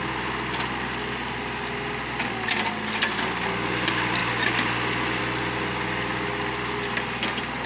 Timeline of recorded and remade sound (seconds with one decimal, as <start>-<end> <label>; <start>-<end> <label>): 0.0-7.7 recorded